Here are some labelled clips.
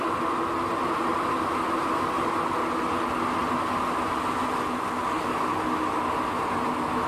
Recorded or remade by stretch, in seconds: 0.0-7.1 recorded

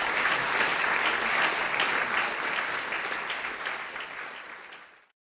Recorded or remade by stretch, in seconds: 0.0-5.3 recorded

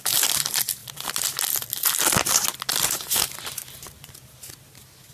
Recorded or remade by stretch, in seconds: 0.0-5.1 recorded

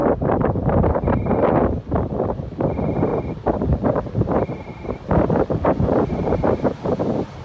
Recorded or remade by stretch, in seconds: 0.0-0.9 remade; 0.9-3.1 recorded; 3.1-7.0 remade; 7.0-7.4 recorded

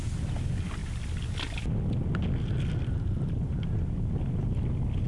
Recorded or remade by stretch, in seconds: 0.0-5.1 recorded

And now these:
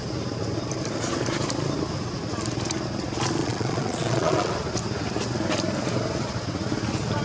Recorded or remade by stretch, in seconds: 0.0-3.4 recorded; 3.4-4.5 remade; 4.5-7.2 recorded

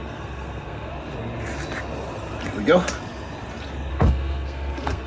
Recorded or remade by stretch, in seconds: 0.0-0.9 remade; 0.9-3.9 recorded; 3.9-5.1 remade